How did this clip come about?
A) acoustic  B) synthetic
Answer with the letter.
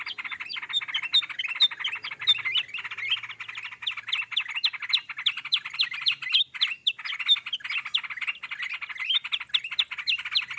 A